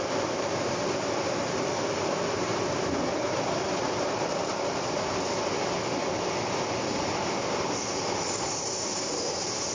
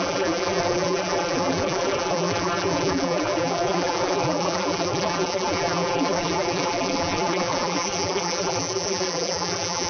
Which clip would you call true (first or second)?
first